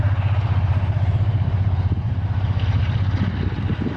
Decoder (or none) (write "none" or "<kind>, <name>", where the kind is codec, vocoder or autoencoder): vocoder, BigVGAN v2